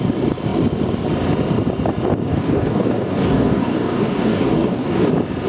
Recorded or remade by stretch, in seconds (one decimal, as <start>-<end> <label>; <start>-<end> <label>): 0.0-2.3 recorded; 2.3-5.1 remade; 5.1-5.5 recorded